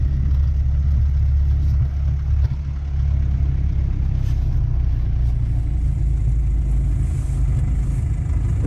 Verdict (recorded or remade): recorded